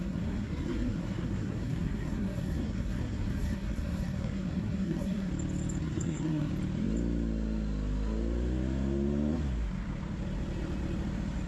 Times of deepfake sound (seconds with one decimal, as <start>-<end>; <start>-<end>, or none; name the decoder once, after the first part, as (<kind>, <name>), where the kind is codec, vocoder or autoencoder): 0.0-5.3 (codec, SNAC); 5.8-6.5